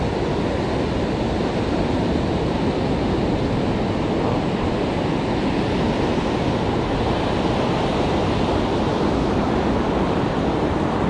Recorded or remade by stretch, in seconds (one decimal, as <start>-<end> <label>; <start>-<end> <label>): 0.0-1.4 recorded; 1.4-2.1 remade; 2.1-11.1 recorded